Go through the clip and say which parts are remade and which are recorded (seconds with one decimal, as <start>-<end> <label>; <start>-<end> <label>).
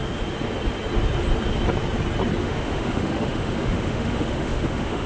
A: 0.0-2.4 recorded; 2.4-5.1 remade